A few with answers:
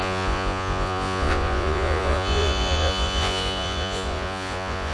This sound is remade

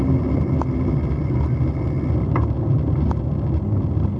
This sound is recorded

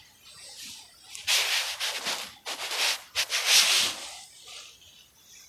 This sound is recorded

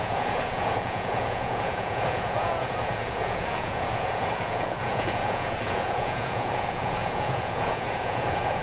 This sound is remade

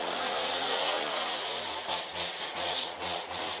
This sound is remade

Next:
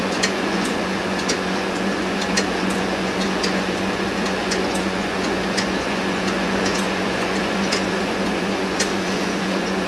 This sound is remade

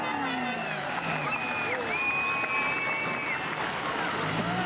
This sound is recorded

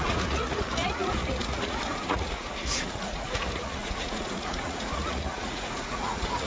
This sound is remade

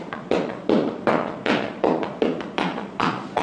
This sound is remade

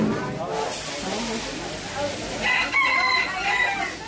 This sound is recorded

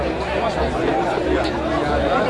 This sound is recorded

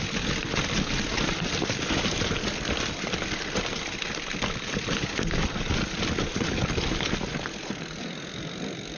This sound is recorded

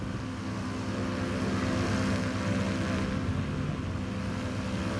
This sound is recorded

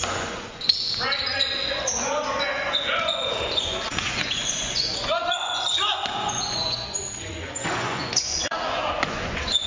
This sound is remade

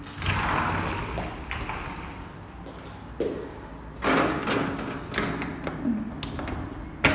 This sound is recorded